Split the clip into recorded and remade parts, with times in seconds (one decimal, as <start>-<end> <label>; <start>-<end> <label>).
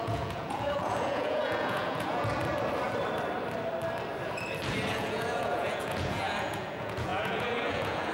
0.0-2.4 remade; 2.4-4.9 recorded; 4.9-8.1 remade